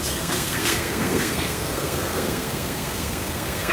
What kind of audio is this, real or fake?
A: fake